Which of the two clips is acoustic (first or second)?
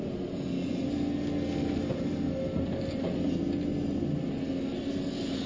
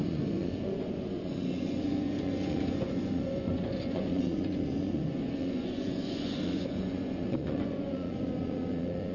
first